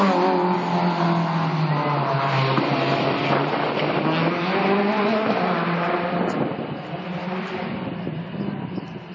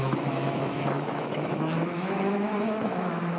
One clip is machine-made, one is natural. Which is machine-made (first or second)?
second